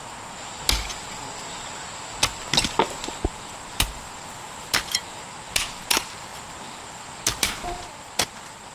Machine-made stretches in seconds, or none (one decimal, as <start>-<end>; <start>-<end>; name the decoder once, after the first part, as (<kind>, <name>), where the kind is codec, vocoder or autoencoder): none